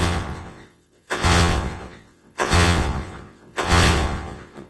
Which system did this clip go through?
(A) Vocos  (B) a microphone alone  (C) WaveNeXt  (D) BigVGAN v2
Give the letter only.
C